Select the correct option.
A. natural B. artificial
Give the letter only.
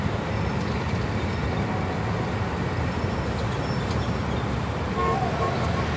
A